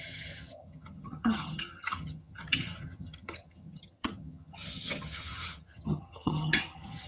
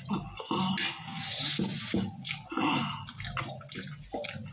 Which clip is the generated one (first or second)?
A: first